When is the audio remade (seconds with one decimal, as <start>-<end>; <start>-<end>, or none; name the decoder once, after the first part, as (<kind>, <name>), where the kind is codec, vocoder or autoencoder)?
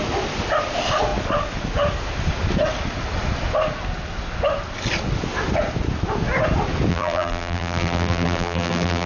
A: 6.9-9.1 (vocoder, BigVGAN v2)